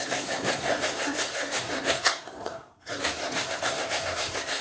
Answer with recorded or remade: remade